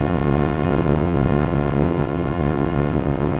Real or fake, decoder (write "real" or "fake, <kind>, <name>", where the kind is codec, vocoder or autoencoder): fake, vocoder, WaveNeXt